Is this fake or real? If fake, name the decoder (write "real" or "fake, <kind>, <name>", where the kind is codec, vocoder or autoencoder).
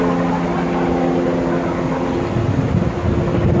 real